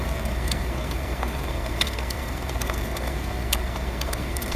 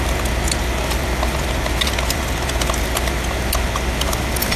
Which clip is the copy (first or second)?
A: first